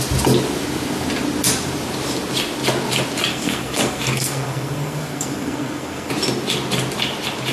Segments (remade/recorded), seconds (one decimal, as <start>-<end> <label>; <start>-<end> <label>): 0.0-3.3 recorded; 3.3-6.1 remade; 6.1-7.5 recorded